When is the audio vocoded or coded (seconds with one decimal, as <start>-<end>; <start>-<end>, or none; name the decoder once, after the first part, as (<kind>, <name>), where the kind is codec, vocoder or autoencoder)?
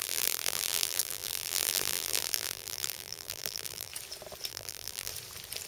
0.0-3.9 (vocoder, BigVGAN v2); 4.5-5.1